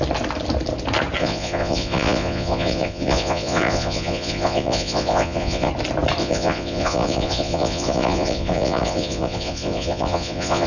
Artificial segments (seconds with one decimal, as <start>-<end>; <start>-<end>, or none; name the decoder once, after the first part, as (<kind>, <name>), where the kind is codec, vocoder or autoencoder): 1.2-5.7 (vocoder, Vocos); 6.2-10.7